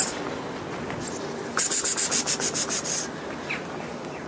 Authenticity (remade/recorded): recorded